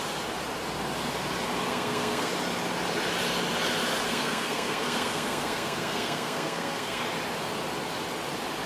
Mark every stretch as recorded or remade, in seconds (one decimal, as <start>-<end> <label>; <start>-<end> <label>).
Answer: 0.0-1.7 recorded; 1.7-2.3 remade; 2.3-4.1 recorded; 4.1-7.0 remade; 7.0-8.7 recorded